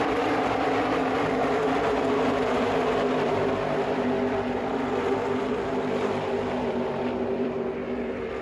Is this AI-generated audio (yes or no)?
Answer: yes